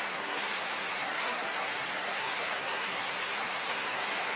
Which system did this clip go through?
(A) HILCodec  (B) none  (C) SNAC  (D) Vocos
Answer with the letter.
C